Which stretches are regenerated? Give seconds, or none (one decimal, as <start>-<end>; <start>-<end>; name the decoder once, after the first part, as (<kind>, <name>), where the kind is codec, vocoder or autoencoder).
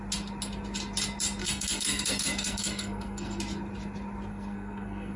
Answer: 1.4-3.4 (codec, SNAC); 4.3-5.2